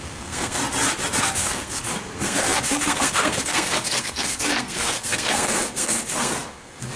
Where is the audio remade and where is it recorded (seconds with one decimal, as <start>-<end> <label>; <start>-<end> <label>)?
0.0-0.6 remade; 0.6-1.2 recorded; 1.2-7.0 remade